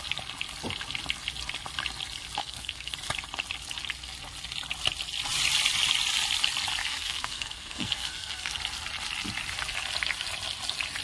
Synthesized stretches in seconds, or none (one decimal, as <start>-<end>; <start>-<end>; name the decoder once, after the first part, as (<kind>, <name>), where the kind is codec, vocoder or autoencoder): 2.4-2.9 (codec, SNAC); 6.8-8.6